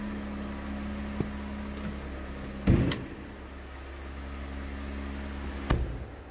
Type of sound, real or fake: real